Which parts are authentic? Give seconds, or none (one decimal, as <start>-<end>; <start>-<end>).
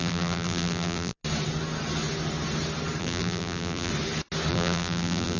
1.2-3.0; 3.9-4.5